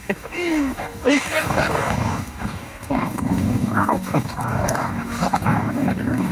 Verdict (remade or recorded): remade